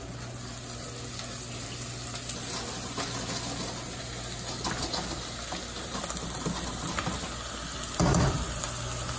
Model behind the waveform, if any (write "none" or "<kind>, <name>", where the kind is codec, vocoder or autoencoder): none